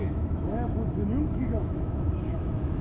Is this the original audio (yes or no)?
no